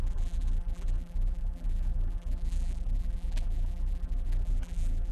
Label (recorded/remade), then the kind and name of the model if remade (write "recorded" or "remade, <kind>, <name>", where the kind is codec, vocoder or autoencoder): remade, vocoder, BigVGAN v2